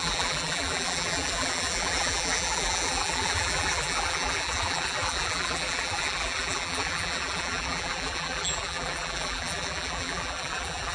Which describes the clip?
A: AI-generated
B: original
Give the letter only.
A